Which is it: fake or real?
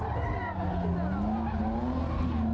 real